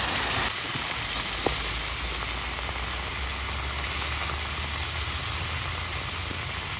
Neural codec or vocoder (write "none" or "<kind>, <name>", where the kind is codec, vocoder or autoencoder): none